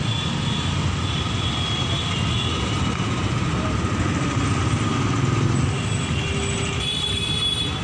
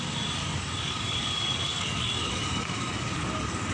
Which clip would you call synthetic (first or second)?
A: second